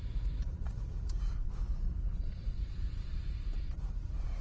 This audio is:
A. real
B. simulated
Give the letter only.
B